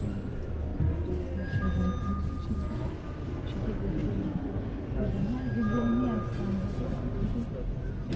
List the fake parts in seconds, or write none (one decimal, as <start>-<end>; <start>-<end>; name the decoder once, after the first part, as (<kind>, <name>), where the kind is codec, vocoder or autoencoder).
none

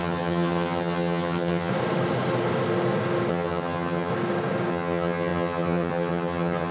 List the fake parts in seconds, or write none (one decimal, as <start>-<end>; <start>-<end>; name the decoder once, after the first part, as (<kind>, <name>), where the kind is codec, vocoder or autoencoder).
0.0-1.7 (vocoder, HiFi-GAN); 3.3-4.1; 4.7-6.7

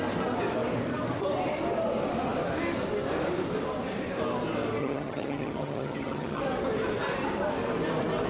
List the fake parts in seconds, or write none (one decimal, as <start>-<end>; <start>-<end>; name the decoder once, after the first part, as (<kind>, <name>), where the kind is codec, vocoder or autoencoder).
4.8-6.4 (vocoder, HiFi-GAN)

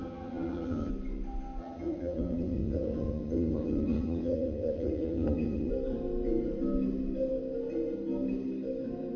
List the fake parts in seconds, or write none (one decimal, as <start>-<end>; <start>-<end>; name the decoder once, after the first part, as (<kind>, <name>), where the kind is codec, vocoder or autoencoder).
0.0-0.9 (vocoder, HiFi-GAN); 1.6-5.7

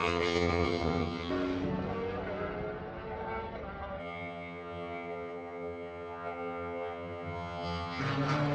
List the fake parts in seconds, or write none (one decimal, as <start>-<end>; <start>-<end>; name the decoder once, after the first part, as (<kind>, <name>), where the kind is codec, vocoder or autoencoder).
0.0-1.3 (vocoder, HiFi-GAN); 4.0-8.0